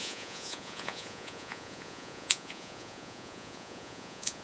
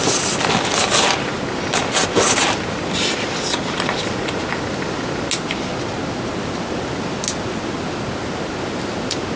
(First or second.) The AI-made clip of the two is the first